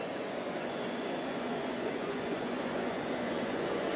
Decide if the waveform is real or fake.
fake